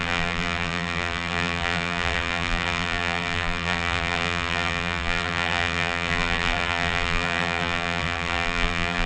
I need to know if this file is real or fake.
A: fake